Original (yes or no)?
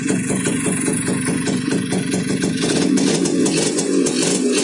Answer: no